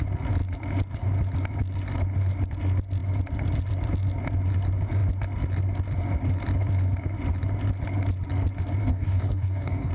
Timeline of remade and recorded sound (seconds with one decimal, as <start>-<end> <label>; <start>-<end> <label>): 0.0-8.8 recorded; 8.8-9.9 remade